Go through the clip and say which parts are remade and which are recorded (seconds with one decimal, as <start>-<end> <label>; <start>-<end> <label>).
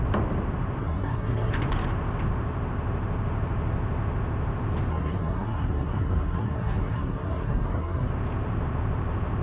0.0-0.8 recorded; 0.8-1.5 remade; 1.5-4.9 recorded; 4.9-8.1 remade; 8.1-9.4 recorded